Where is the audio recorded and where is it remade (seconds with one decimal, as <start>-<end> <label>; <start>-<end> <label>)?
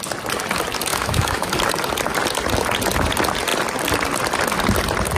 0.0-0.9 recorded; 0.9-1.5 remade; 1.5-5.2 recorded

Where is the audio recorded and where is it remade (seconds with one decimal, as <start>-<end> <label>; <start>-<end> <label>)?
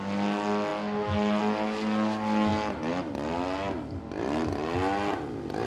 0.0-5.7 recorded